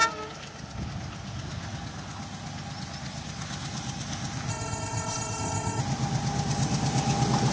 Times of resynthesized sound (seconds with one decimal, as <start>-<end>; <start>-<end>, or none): 4.5-5.8